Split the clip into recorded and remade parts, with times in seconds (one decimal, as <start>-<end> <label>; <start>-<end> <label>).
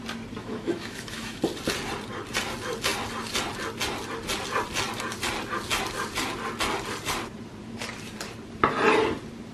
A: 0.0-0.4 recorded; 0.4-1.4 remade; 1.4-9.5 recorded